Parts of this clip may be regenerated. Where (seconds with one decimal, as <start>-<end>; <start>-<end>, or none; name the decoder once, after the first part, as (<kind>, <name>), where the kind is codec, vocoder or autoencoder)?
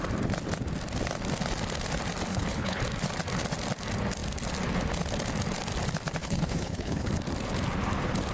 2.3-2.8 (codec, HILCodec); 6.2-7.1